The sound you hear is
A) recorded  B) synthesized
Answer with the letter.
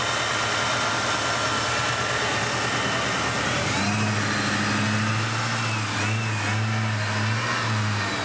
A